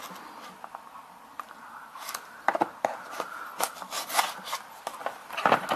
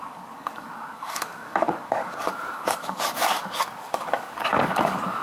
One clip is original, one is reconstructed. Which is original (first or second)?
first